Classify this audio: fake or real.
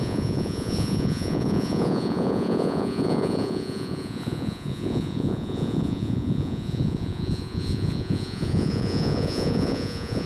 fake